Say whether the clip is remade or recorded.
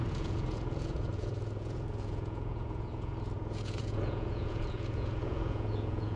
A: remade